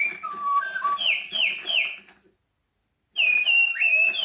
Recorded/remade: recorded